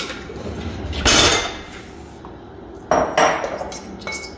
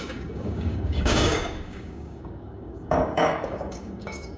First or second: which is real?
first